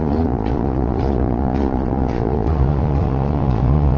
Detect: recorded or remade remade